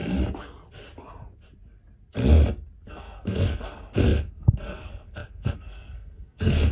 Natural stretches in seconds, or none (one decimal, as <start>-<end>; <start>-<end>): 0.0-2.9